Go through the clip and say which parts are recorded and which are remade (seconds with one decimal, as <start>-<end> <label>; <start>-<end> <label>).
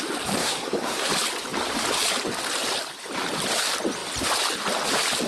0.0-0.4 recorded; 0.4-1.1 remade; 1.1-5.3 recorded